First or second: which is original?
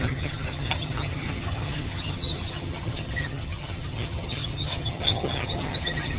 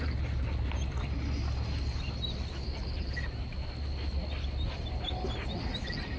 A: second